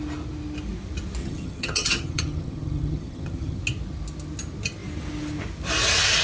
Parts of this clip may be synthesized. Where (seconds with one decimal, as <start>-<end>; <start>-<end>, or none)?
1.2-3.6